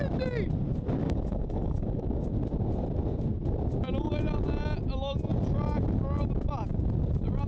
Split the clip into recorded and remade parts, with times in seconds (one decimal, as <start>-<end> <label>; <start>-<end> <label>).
0.0-1.0 recorded; 1.0-2.2 remade; 2.2-7.5 recorded